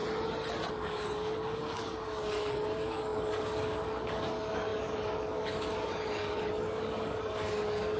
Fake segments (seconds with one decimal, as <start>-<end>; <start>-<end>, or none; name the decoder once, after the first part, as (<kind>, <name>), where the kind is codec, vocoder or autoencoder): 0.7-8.0 (codec, DAC)